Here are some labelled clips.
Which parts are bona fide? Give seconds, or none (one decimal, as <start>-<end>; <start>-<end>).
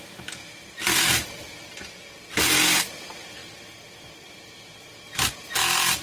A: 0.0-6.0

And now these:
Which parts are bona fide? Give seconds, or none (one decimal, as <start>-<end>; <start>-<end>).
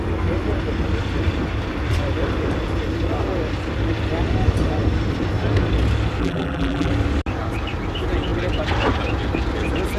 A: 0.0-6.2; 6.9-10.0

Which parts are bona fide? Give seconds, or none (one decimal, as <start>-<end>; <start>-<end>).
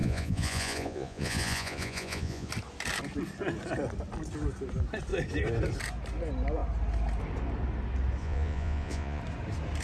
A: 2.5-8.2; 9.2-9.8